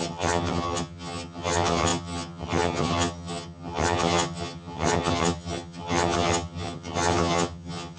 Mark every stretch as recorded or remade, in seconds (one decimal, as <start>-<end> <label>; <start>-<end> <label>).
0.0-8.0 remade